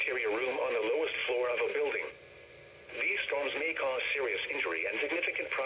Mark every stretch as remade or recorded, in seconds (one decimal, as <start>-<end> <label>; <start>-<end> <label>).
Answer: 0.0-5.7 recorded